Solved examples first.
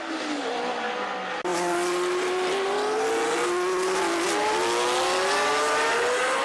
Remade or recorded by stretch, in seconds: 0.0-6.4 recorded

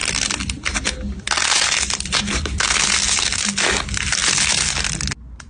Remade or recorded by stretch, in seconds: 0.0-5.5 recorded

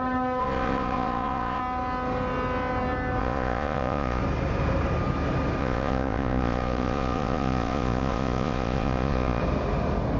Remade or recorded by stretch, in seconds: 0.0-0.4 recorded; 0.4-1.6 remade; 1.6-3.2 recorded; 3.2-4.2 remade; 4.2-5.6 recorded; 5.6-9.4 remade; 9.4-10.2 recorded

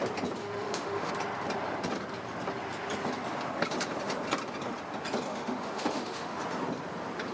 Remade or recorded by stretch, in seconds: 0.0-0.4 recorded; 0.4-1.1 remade; 1.1-5.3 recorded; 5.3-6.4 remade; 6.4-7.3 recorded

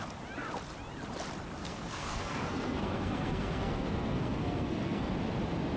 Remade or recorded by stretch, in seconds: 0.0-1.6 recorded; 1.6-5.1 remade; 5.1-5.8 recorded

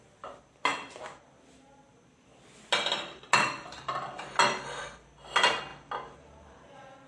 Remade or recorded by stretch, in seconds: 0.0-7.1 recorded

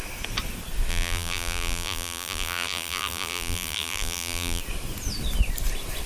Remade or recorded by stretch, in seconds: 0.0-0.9 recorded; 0.9-4.6 remade; 4.6-6.1 recorded